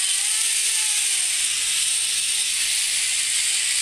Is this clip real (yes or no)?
yes